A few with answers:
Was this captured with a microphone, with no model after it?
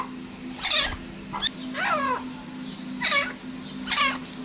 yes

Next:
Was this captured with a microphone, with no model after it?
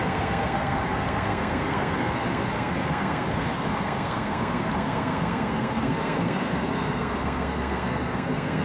no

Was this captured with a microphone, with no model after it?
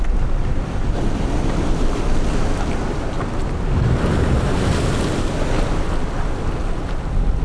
yes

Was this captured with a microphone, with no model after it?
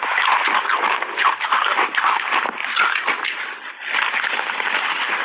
yes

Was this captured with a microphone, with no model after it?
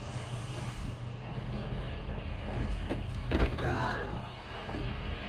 no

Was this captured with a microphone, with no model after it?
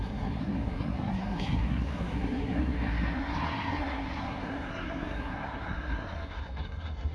no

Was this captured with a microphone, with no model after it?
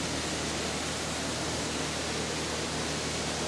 yes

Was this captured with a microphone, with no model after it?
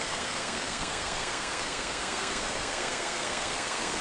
no